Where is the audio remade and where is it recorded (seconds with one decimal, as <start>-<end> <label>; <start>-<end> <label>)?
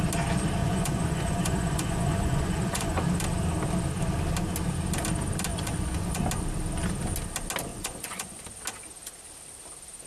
0.0-0.6 recorded; 0.6-3.0 remade; 3.0-5.5 recorded; 5.5-6.2 remade; 6.2-7.7 recorded; 7.7-8.4 remade; 8.4-10.1 recorded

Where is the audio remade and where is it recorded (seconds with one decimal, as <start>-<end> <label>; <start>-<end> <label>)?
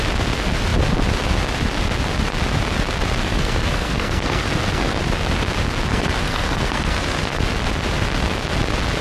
0.0-3.2 recorded; 3.2-5.0 remade; 5.0-5.9 recorded; 5.9-7.3 remade; 7.3-9.0 recorded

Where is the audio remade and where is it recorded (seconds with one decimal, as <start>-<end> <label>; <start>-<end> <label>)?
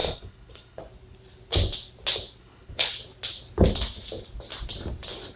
0.0-0.8 remade; 0.8-2.4 recorded; 2.4-2.9 remade; 2.9-5.4 recorded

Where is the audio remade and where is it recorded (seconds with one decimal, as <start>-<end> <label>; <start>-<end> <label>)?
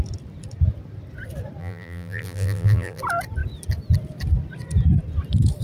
0.0-1.6 recorded; 1.6-3.0 remade; 3.0-5.6 recorded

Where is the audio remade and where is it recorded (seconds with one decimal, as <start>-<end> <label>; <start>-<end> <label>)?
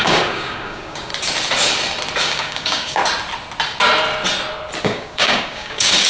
0.0-1.1 remade; 1.1-2.2 recorded; 2.2-3.0 remade; 3.0-4.8 recorded; 4.8-6.1 remade